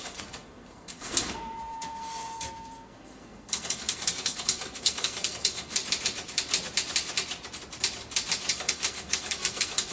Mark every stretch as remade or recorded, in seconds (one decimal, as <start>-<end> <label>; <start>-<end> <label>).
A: 0.0-5.8 remade; 5.8-8.5 recorded; 8.5-9.9 remade